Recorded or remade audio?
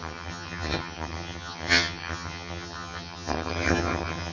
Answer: remade